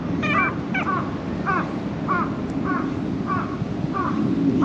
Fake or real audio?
real